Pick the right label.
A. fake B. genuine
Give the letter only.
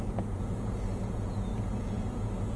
A